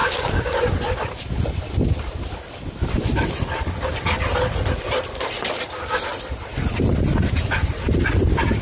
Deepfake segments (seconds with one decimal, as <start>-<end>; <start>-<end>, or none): 0.0-0.6